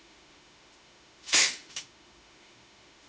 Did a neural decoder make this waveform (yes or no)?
yes